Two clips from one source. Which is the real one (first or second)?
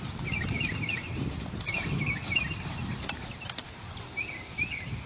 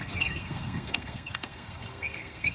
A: first